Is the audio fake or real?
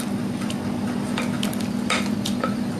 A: fake